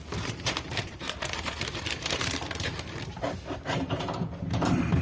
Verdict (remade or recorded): remade